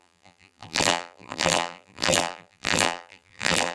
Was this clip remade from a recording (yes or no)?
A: yes